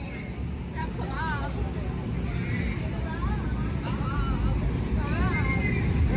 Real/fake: real